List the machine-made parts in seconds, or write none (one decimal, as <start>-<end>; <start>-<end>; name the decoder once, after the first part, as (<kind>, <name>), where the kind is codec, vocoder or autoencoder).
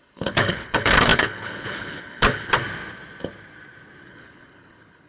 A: 0.0-2.6 (codec, HILCodec); 4.0-5.1